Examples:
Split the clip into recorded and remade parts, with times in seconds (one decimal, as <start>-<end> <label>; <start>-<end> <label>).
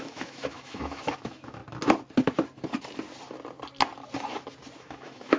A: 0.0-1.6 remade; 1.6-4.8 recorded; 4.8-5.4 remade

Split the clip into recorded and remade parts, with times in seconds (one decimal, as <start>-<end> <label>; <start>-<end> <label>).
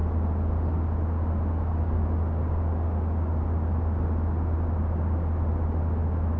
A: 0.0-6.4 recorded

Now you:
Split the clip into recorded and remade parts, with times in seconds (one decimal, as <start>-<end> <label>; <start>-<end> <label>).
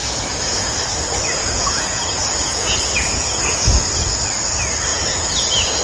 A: 0.0-0.8 remade; 0.8-1.4 recorded; 1.4-3.7 remade; 3.7-4.9 recorded; 4.9-5.8 remade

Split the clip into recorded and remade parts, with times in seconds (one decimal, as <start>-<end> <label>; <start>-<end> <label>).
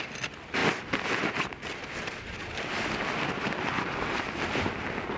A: 0.0-5.2 recorded